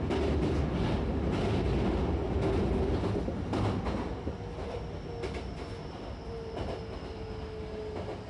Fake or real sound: real